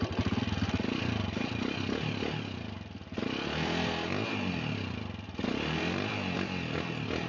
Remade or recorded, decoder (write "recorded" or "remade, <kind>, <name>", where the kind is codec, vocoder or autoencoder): recorded